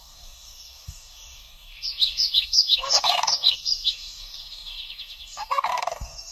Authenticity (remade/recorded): remade